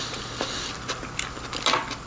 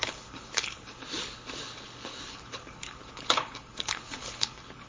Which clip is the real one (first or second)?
first